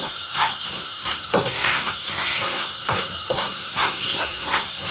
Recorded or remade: remade